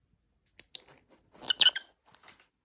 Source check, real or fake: real